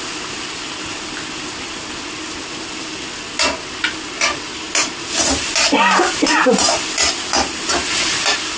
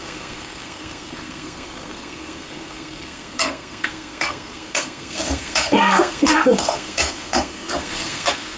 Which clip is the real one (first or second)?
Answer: first